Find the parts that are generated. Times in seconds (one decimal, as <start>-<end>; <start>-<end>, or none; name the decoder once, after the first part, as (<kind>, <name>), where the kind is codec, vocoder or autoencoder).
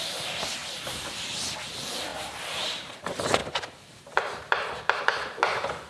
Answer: 0.0-0.6 (vocoder, BigVGAN v2); 1.7-3.4; 4.0-5.9